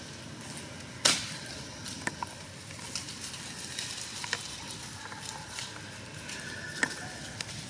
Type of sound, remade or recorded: recorded